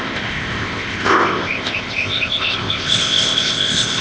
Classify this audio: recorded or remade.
remade